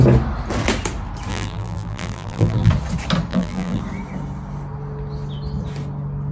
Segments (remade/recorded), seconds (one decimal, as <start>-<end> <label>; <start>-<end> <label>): 0.0-1.3 recorded; 1.3-2.7 remade; 2.7-3.3 recorded; 3.3-3.8 remade; 3.8-6.3 recorded